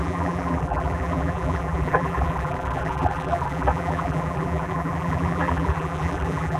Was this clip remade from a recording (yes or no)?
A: yes